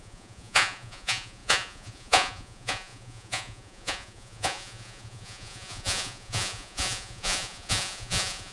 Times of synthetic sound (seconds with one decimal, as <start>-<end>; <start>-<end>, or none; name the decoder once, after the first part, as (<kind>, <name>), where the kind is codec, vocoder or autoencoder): 0.0-8.5 (vocoder, Vocos)